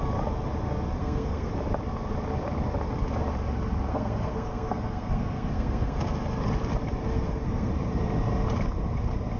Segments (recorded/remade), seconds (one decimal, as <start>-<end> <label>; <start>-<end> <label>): 0.0-1.0 recorded; 1.0-1.5 remade; 1.5-3.9 recorded; 3.9-6.0 remade; 6.0-7.1 recorded; 7.1-7.7 remade; 7.7-9.4 recorded